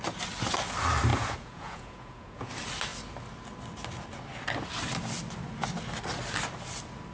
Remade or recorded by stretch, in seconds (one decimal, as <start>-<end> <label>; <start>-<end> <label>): 0.0-1.1 recorded; 1.1-2.5 remade; 2.5-7.1 recorded